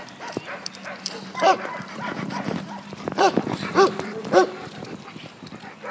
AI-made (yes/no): yes